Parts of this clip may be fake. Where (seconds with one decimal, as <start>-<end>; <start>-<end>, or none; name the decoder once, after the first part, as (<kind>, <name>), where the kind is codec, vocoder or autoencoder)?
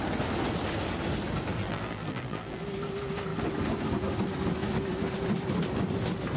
1.6-2.6 (vocoder, BigVGAN v2)